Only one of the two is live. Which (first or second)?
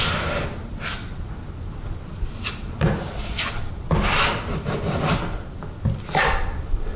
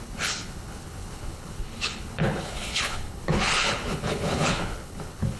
first